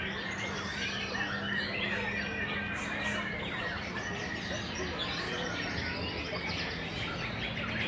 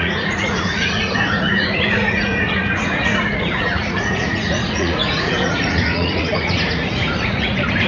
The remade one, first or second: second